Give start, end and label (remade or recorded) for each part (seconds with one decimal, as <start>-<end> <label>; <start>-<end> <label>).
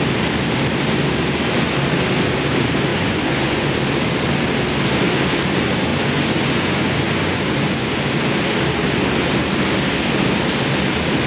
0.0-2.9 recorded; 2.9-3.7 remade; 3.7-5.9 recorded; 5.9-8.1 remade; 8.1-11.3 recorded